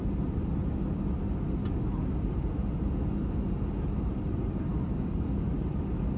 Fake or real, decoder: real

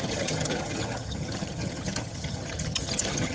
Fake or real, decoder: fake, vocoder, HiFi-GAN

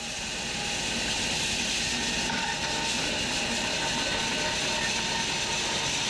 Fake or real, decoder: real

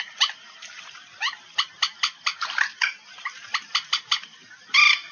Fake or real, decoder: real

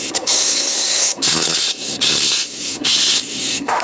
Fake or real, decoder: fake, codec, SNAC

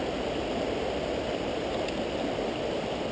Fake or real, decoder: real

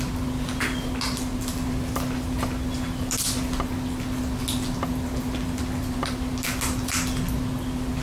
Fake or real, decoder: real